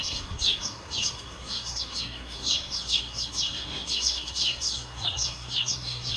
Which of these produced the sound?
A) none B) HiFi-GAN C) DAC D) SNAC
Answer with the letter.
D